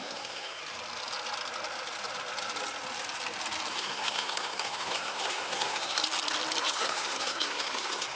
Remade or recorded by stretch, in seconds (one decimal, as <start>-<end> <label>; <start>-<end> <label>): 0.0-0.6 remade; 0.6-3.7 recorded; 3.7-6.0 remade; 6.0-6.6 recorded; 6.6-8.2 remade